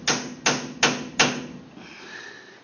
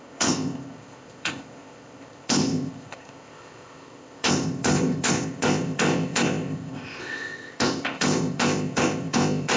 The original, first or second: first